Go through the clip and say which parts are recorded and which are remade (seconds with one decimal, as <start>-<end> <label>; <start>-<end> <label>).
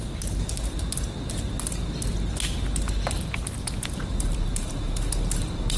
0.0-3.1 recorded; 3.1-5.8 remade